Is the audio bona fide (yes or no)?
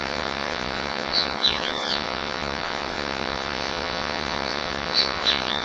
no